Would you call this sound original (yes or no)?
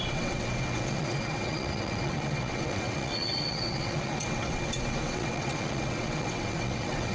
no